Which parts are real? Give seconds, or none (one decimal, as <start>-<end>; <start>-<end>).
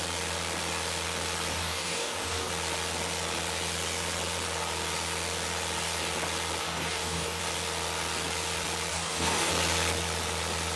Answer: 0.0-1.5; 2.5-6.6; 7.4-8.9; 9.5-10.8